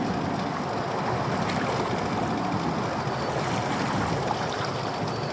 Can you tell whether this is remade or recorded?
recorded